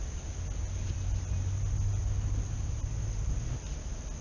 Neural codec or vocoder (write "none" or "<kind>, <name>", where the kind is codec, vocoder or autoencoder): none